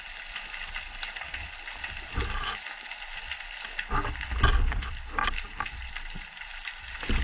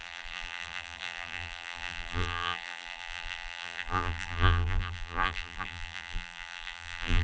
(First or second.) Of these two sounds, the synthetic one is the second